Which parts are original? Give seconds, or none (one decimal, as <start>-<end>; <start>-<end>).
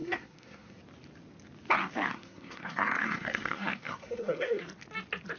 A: 0.8-2.1; 4.6-5.4